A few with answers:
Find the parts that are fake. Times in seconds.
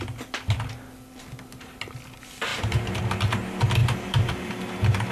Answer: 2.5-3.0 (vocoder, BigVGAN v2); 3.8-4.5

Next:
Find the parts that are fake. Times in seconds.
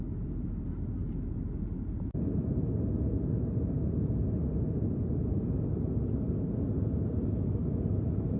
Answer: none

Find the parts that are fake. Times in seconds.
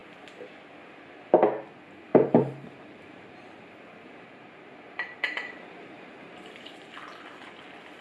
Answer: 2.1-6.9 (vocoder, BigVGAN v2)